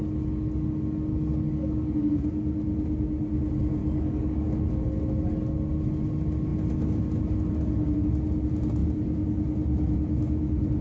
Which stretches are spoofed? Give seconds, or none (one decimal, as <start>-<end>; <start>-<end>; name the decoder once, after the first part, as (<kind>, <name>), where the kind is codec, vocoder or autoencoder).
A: 1.1-2.2 (codec, DAC); 3.8-4.3